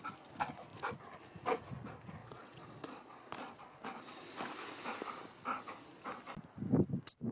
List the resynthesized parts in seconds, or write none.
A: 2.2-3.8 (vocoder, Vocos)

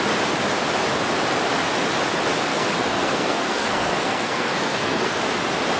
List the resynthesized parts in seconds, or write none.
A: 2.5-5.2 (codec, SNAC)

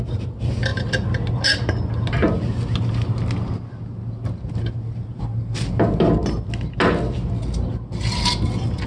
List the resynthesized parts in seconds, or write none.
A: none